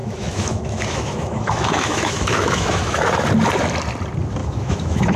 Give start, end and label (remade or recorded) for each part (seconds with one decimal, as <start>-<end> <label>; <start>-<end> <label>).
0.0-3.1 remade; 3.1-4.4 recorded; 4.4-5.2 remade